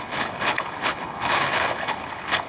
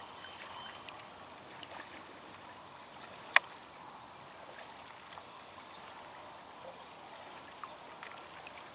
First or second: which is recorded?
second